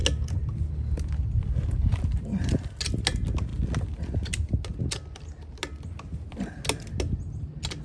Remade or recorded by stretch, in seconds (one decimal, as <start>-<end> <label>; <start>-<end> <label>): 0.0-7.8 recorded